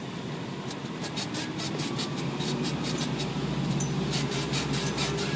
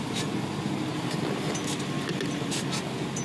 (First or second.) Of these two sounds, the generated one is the first